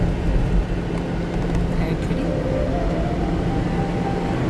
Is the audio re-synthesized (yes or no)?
no